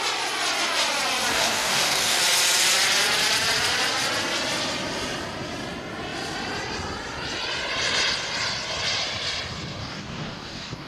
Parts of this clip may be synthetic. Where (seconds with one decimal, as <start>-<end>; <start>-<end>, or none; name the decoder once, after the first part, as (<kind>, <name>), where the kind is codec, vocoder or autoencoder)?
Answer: 1.3-2.2 (codec, DAC); 9.8-10.9